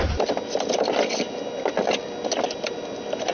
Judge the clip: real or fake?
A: real